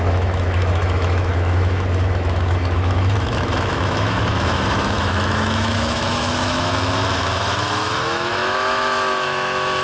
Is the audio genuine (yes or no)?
no